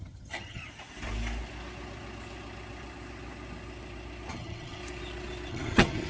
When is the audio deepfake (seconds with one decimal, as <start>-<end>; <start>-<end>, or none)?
0.0-0.6; 4.3-4.8; 5.5-6.1